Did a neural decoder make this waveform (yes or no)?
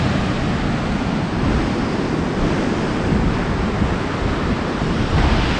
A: no